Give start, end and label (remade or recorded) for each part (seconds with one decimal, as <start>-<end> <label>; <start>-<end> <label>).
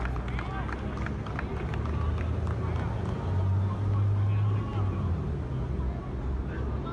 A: 0.0-6.9 recorded